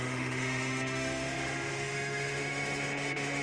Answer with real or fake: fake